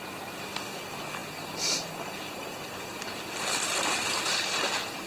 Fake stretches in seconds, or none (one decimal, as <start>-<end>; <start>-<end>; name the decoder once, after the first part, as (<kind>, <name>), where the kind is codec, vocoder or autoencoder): 0.0-5.1 (vocoder, BigVGAN v2)

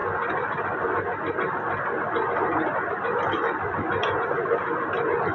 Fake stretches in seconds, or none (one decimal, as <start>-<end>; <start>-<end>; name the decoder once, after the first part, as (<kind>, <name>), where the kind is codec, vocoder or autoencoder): none